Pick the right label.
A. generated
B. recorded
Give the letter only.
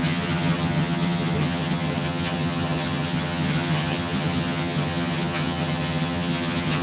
A